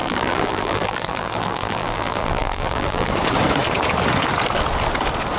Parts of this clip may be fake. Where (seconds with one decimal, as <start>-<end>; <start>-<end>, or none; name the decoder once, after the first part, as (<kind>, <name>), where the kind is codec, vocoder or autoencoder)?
0.0-3.1 (vocoder, BigVGAN v2)